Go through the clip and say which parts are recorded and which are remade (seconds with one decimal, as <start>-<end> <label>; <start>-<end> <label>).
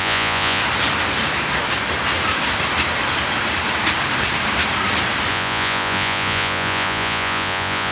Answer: 0.0-0.6 remade; 0.6-5.3 recorded; 5.3-7.9 remade